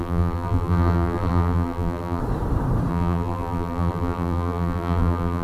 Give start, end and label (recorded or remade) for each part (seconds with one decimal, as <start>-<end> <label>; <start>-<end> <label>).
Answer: 0.0-2.2 remade; 2.2-2.9 recorded; 2.9-5.4 remade